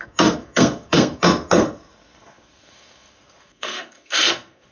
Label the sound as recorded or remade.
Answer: remade